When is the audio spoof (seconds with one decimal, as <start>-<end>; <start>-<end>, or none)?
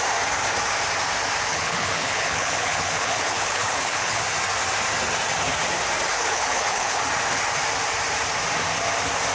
1.5-4.2; 6.1-7.0